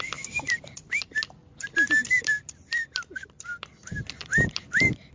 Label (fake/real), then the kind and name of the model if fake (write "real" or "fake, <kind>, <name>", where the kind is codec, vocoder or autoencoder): fake, vocoder, BigVGAN v2